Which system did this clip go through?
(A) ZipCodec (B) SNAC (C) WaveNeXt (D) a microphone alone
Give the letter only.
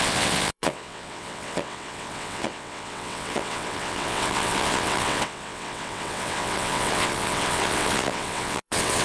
C